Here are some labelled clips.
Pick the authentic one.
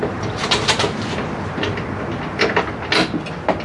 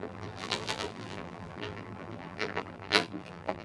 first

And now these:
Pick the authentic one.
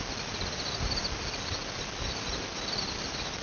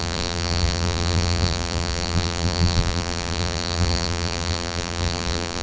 first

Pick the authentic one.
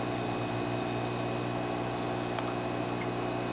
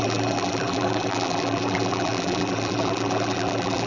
first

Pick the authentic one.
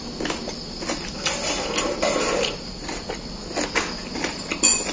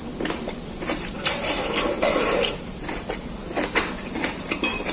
first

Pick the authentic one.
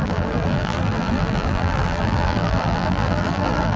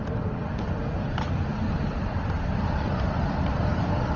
second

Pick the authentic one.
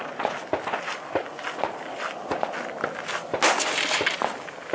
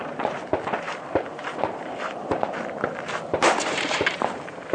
first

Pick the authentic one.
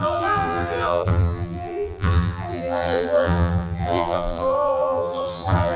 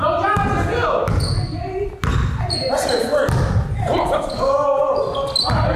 second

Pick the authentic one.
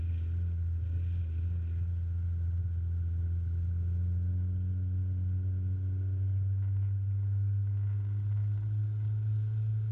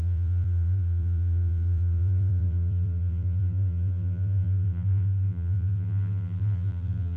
first